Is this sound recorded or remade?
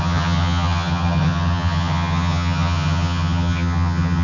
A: remade